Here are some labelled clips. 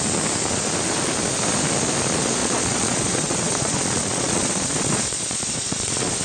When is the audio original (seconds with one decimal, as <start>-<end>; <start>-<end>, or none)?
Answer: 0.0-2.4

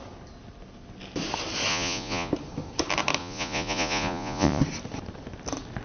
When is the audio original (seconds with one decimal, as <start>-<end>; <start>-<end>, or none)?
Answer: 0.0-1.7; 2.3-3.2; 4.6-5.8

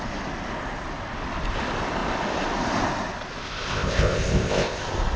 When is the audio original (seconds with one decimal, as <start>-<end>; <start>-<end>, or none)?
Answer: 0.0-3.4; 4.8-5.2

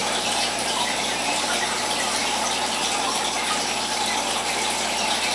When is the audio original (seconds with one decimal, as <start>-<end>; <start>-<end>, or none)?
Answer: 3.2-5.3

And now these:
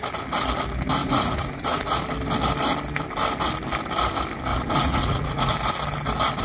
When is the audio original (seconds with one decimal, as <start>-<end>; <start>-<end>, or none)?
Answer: 0.0-1.0; 2.0-4.5; 5.5-6.4

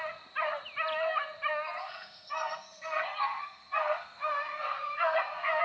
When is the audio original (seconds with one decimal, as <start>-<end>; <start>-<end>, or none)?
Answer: 0.0-1.8

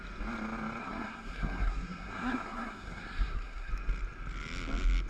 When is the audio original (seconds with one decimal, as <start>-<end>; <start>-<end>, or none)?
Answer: 0.0-0.8; 3.7-5.1